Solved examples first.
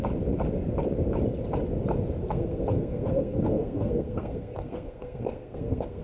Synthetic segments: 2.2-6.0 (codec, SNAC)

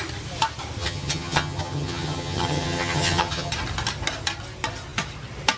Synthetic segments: 0.8-3.5 (vocoder, HiFi-GAN)

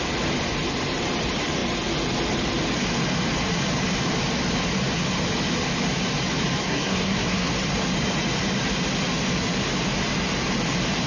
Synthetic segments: 6.6-7.5 (codec, SNAC)

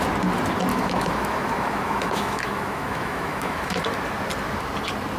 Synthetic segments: 0.7-3.8 (autoencoder, DAC-VAE)

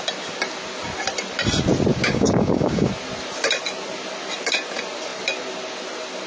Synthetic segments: 2.0-2.9 (codec, DAC)

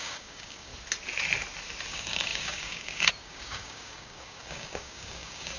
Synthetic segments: 0.0-0.7 (codec, DAC); 1.9-5.6

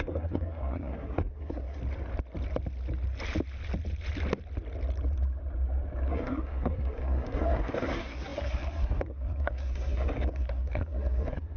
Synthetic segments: 0.0-1.8 (codec, SNAC); 6.1-11.6

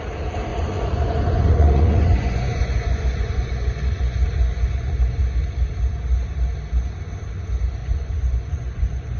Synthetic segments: 0.5-5.2 (vocoder, Vocos); 7.8-9.2